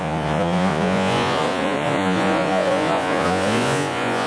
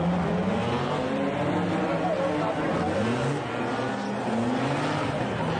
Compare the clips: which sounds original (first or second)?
second